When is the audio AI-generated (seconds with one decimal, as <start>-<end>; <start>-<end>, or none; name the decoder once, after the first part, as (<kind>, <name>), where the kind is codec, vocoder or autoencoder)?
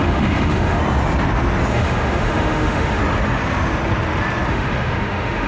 0.0-0.8 (autoencoder, DAC-VAE); 1.7-3.0; 4.5-5.5